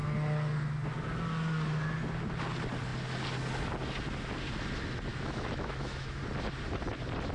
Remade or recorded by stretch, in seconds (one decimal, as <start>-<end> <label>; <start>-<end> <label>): 0.0-5.1 recorded; 5.1-6.2 remade; 6.2-7.3 recorded